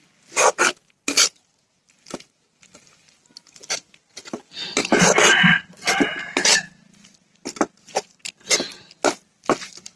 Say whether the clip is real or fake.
real